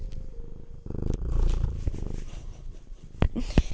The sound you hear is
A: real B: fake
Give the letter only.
A